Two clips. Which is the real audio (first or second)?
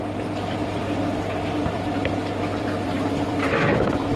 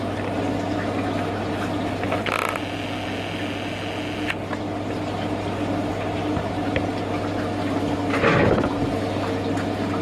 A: second